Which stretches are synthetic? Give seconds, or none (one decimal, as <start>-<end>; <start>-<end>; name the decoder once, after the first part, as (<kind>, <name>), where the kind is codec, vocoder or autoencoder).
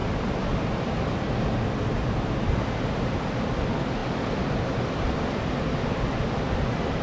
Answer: none